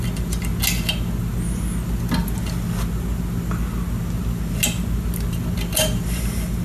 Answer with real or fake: real